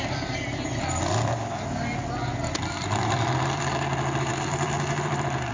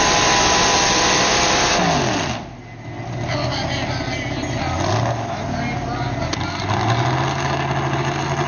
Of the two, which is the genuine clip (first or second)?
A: second